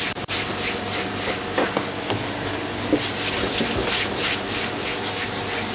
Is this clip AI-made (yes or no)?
no